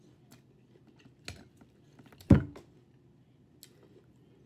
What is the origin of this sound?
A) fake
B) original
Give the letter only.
B